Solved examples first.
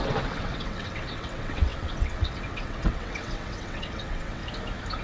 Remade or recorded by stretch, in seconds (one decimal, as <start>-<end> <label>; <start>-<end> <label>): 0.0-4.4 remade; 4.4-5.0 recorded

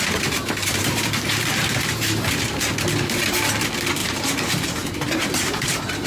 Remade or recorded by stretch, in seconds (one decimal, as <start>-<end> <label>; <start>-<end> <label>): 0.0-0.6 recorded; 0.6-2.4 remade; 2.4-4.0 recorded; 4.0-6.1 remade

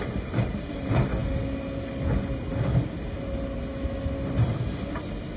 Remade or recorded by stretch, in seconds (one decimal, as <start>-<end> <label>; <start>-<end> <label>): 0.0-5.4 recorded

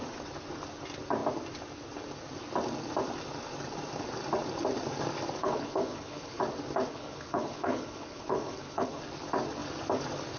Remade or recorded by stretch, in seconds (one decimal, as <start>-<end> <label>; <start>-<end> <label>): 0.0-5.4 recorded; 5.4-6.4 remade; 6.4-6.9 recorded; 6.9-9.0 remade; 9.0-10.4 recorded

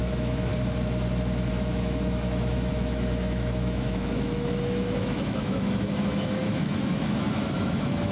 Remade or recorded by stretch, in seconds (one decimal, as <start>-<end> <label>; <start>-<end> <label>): 0.0-0.5 remade; 0.5-1.5 recorded; 1.5-8.1 remade